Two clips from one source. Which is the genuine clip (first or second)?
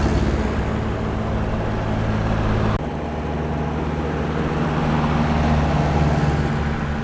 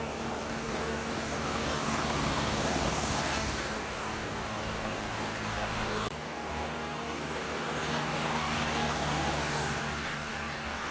first